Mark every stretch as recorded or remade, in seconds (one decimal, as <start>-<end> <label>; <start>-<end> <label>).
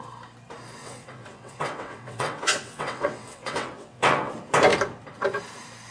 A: 0.0-0.8 recorded; 0.8-4.3 remade; 4.3-5.9 recorded